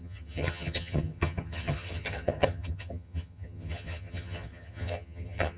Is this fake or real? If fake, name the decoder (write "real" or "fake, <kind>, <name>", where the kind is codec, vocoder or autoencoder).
fake, vocoder, HiFi-GAN